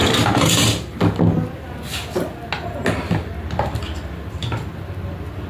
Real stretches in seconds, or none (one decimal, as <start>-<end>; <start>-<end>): 0.0-5.5